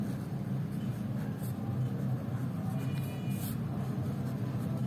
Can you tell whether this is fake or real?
real